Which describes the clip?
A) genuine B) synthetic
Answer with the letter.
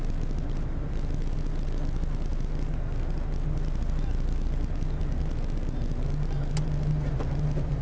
A